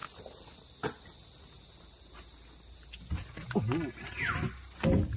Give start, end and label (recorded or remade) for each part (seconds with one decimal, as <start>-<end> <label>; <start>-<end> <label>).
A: 0.0-5.2 recorded

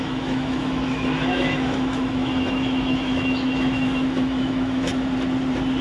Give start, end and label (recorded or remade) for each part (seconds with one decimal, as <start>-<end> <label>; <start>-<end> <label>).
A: 0.0-4.9 remade; 4.9-5.8 recorded